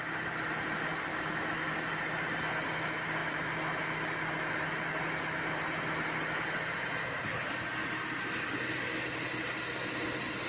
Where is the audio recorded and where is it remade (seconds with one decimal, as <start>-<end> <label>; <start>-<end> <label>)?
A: 0.0-1.1 recorded; 1.1-1.9 remade; 1.9-10.5 recorded